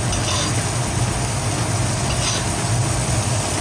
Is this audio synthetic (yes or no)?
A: no